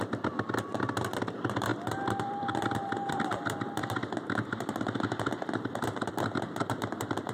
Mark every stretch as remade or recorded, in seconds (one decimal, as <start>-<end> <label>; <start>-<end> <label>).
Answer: 0.0-7.3 remade